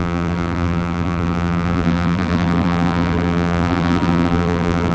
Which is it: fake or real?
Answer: fake